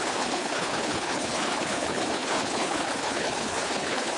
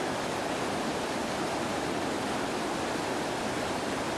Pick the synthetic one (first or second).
first